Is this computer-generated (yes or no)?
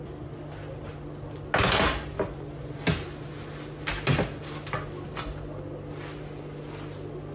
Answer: no